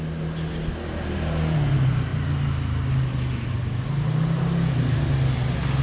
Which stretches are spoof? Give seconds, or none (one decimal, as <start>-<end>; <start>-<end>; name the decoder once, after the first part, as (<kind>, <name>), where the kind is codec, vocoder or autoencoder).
none